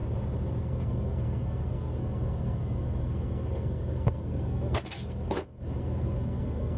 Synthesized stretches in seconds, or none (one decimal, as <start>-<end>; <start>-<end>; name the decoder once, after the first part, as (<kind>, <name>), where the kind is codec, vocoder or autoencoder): 0.6-6.8 (codec, SNAC)